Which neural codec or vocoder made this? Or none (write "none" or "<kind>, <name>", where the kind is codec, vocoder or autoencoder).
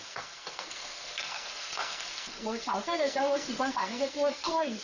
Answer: codec, SNAC